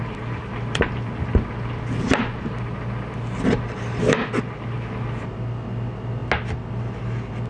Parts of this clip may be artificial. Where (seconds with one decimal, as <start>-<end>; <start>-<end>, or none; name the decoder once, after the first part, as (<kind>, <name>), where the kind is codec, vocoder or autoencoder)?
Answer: none